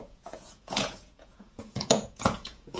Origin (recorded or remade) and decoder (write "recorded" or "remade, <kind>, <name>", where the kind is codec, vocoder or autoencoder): remade, vocoder, Vocos